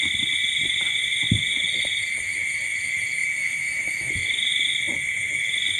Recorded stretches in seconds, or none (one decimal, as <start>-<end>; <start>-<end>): 0.0-3.2; 4.1-5.8